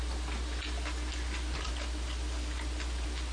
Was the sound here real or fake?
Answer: real